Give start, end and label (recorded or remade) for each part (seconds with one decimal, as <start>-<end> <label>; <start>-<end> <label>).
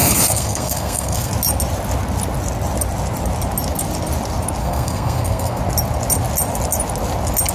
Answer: 0.0-1.3 remade; 1.3-4.6 recorded; 4.6-5.6 remade; 5.6-7.5 recorded